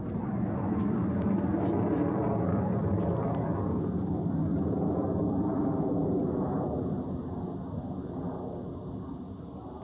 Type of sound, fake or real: real